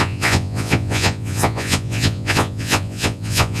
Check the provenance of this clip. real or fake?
fake